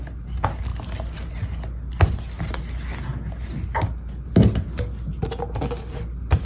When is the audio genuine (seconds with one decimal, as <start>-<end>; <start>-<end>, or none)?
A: 0.0-6.5